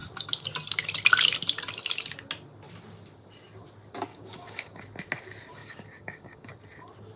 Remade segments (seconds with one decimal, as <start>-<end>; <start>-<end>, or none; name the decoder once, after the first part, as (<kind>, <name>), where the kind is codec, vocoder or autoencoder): 4.1-4.8 (codec, DAC); 5.6-6.5